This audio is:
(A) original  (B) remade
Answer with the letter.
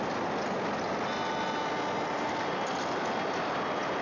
A